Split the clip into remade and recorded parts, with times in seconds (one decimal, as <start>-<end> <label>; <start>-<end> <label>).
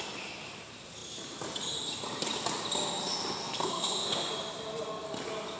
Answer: 0.0-3.4 recorded; 3.4-4.3 remade; 4.3-5.6 recorded